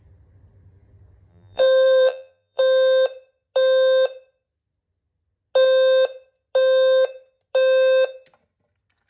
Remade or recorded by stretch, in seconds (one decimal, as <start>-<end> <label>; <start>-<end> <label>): 0.0-1.3 recorded; 1.3-2.6 remade; 2.6-9.1 recorded